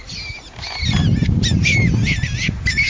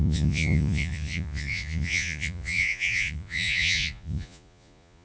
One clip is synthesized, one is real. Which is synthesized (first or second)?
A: second